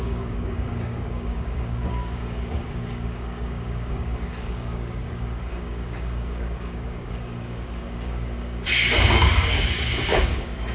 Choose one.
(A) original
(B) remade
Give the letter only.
B